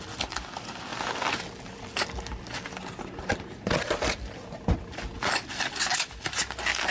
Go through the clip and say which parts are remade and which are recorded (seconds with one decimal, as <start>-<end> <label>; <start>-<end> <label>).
0.0-6.9 recorded